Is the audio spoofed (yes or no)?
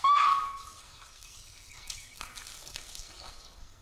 yes